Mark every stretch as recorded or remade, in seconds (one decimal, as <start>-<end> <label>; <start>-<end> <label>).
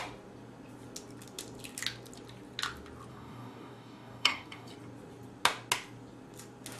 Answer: 0.0-3.1 recorded; 3.1-4.7 remade; 4.7-6.8 recorded